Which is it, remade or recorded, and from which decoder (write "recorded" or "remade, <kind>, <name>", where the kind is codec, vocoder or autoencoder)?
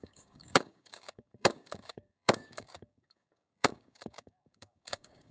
remade, codec, DAC